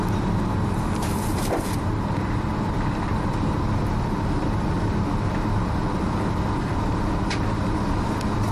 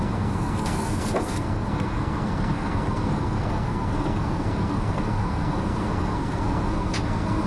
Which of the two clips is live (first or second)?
first